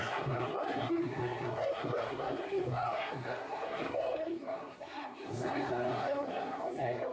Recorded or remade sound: remade